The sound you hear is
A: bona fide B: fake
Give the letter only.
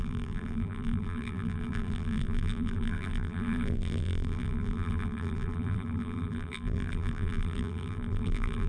B